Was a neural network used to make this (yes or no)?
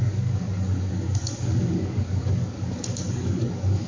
yes